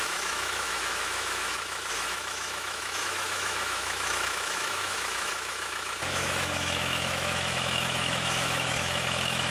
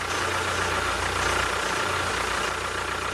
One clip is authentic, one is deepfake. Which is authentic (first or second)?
second